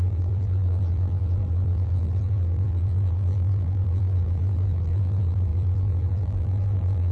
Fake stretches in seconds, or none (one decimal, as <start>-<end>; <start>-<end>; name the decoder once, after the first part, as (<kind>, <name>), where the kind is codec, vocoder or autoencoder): 0.0-7.1 (vocoder, BigVGAN v2)